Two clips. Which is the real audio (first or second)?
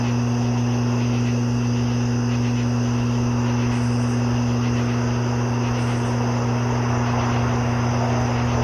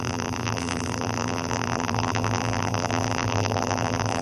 first